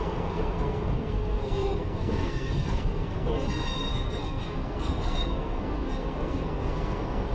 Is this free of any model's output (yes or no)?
no